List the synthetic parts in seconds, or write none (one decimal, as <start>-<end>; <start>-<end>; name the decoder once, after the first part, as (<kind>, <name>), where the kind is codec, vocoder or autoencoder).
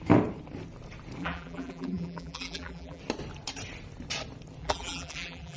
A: 1.2-3.0 (vocoder, BigVGAN v2); 4.6-5.6